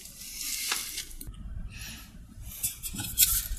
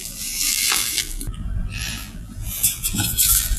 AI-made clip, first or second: second